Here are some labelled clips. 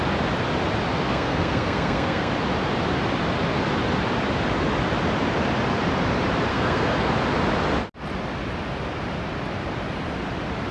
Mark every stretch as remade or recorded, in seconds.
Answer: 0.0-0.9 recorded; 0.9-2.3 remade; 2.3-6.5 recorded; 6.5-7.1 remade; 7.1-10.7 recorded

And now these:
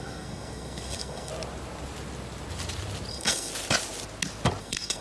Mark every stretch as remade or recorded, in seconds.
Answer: 0.0-1.3 remade; 1.3-3.1 recorded; 3.1-3.5 remade; 3.5-4.6 recorded; 4.6-5.0 remade

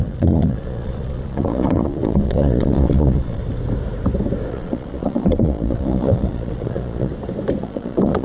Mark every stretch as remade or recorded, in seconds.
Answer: 0.0-3.4 remade; 3.4-4.5 recorded; 4.5-7.1 remade; 7.1-7.6 recorded; 7.6-8.2 remade

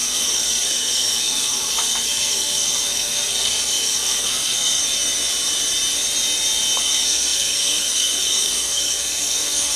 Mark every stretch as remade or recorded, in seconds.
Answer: 0.0-4.8 remade; 4.8-6.8 recorded; 6.8-9.8 remade